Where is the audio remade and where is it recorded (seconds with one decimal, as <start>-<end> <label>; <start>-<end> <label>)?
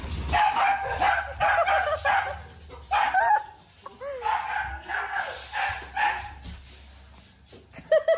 0.0-4.7 recorded; 4.7-5.2 remade; 5.2-8.2 recorded